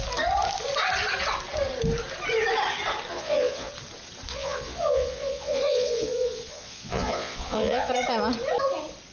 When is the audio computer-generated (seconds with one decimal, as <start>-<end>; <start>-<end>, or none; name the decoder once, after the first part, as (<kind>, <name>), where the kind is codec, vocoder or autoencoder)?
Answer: 3.1-3.7 (vocoder, Vocos); 4.3-7.9